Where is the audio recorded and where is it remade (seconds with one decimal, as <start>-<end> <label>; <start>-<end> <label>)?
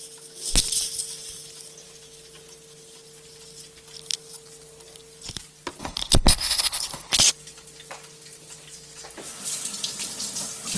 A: 0.0-5.8 recorded; 5.8-7.2 remade; 7.2-10.8 recorded